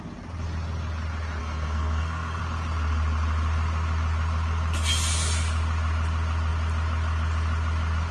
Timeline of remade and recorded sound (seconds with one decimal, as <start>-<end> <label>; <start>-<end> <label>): 0.0-1.4 recorded; 1.4-2.4 remade; 2.4-8.1 recorded